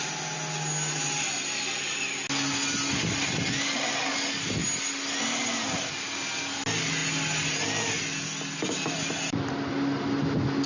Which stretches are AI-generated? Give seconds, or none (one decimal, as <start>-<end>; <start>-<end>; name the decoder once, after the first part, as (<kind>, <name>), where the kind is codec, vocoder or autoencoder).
none

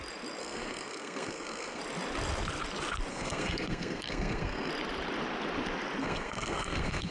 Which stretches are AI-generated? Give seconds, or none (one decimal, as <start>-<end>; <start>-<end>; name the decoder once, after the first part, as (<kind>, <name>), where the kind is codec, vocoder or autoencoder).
0.4-1.8 (codec, SNAC); 3.1-4.7; 6.0-7.1

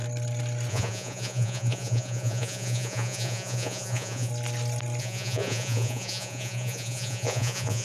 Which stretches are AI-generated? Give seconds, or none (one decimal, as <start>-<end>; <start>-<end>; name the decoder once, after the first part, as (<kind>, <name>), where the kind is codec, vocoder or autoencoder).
0.7-4.3 (vocoder, Vocos); 5.0-7.8

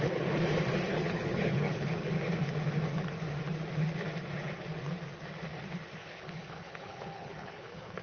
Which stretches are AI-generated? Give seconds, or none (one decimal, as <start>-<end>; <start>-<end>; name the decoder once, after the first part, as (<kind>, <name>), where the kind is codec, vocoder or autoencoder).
0.9-2.1 (codec, HILCodec); 6.0-8.0

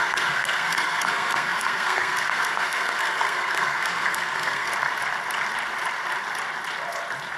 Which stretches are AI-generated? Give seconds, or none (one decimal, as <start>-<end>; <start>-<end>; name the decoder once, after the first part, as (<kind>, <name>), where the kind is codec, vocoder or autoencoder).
0.0-4.7 (codec, SNAC)

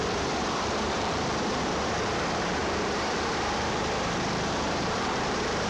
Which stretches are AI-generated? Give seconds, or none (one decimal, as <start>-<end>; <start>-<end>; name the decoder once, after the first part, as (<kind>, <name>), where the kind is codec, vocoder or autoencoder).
0.0-5.7 (vocoder, BigVGAN v2)

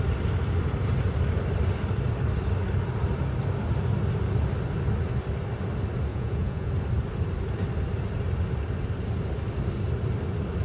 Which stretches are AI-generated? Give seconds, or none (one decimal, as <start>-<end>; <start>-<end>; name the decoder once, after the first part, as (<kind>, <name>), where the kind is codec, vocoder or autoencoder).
6.1-6.7 (vocoder, Vocos)

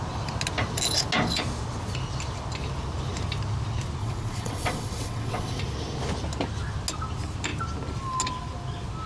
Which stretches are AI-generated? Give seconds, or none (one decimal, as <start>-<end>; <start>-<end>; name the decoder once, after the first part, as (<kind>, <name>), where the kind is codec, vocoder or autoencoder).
4.0-5.6 (vocoder, WaveNeXt)